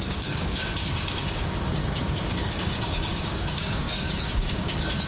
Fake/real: fake